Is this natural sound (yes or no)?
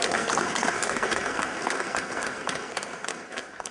no